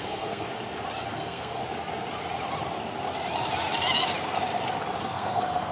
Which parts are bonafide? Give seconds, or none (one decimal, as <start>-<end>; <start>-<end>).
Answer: 0.5-1.1; 1.6-5.0